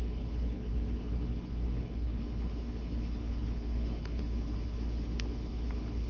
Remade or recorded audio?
remade